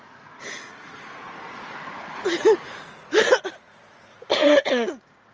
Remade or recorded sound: remade